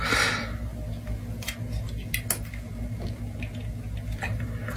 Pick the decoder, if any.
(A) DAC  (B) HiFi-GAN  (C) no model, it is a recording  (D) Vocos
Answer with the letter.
C